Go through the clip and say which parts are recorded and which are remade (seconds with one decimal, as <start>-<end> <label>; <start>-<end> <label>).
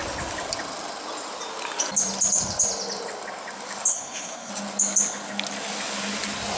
0.0-3.9 recorded; 3.9-4.5 remade; 4.5-6.6 recorded